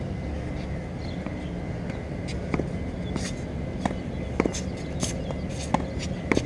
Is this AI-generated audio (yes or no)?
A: no